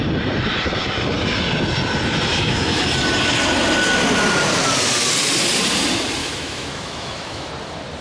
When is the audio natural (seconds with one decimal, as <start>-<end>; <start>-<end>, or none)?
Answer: 0.0-2.3; 2.8-6.2; 7.5-8.0